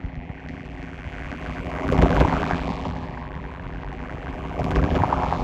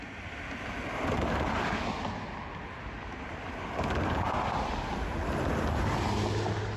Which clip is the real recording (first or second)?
second